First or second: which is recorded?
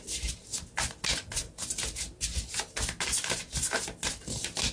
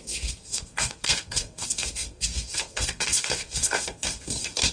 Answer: first